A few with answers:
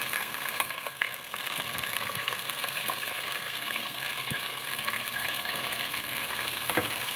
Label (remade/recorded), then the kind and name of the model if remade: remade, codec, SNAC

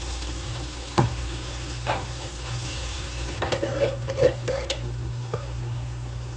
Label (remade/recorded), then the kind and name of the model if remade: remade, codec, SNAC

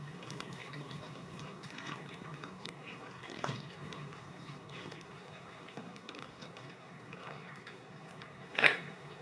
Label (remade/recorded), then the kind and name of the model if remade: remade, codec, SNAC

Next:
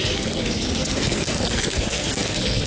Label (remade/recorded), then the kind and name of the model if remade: remade, codec, SNAC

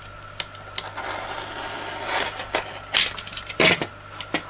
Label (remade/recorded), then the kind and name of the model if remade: recorded